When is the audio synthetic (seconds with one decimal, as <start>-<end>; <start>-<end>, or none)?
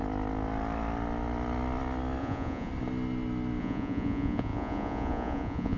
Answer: 2.2-2.7; 3.6-5.8